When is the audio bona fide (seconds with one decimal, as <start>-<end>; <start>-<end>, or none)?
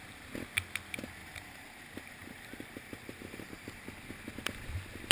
0.0-1.2; 1.8-2.2; 3.5-5.1